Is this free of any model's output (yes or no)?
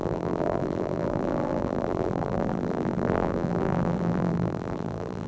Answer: no